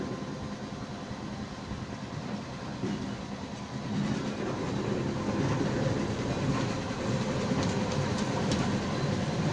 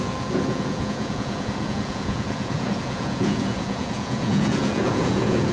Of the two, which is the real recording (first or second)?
first